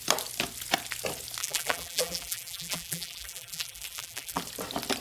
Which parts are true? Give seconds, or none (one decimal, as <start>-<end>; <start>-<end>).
0.0-1.4; 4.4-5.0